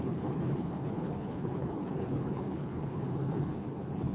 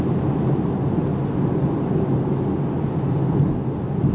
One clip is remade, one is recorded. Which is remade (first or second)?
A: first